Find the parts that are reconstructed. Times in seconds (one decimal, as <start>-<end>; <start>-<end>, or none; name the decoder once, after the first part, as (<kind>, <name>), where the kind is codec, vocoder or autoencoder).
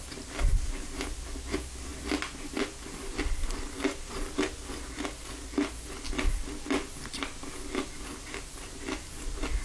none